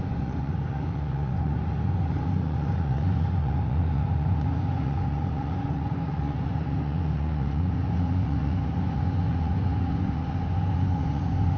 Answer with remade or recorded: remade